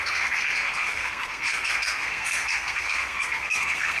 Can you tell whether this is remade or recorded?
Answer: remade